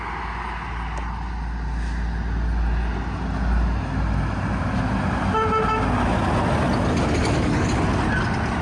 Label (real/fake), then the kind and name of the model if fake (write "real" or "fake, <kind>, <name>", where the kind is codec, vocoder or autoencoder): real